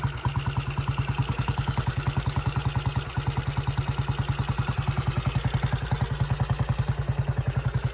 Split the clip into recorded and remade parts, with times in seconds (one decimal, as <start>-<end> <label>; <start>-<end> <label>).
0.0-1.2 recorded; 1.2-2.6 remade; 2.6-7.9 recorded